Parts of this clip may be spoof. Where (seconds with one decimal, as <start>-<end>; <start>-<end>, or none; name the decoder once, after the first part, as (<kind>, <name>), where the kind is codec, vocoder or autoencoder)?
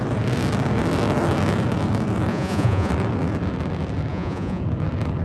2.3-2.9 (vocoder, Vocos); 4.1-4.6